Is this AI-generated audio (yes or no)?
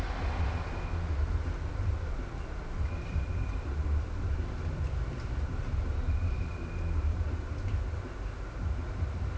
no